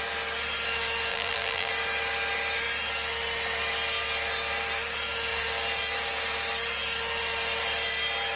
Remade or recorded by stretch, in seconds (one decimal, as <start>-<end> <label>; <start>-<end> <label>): 0.0-1.1 recorded; 1.1-1.7 remade; 1.7-8.4 recorded